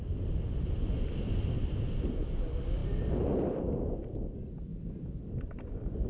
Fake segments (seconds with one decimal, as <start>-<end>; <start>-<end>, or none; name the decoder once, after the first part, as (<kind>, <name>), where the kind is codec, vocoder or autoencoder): none